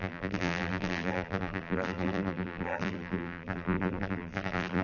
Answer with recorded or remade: remade